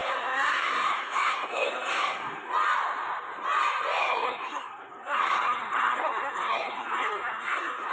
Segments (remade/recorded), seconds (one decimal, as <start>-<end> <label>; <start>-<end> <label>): 0.0-2.5 remade; 2.5-4.0 recorded; 4.0-7.9 remade